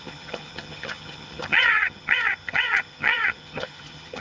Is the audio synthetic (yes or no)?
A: yes